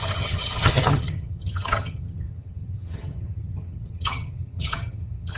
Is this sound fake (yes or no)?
yes